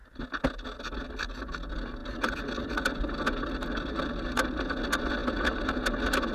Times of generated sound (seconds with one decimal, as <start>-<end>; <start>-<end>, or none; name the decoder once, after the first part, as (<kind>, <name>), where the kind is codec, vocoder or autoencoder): none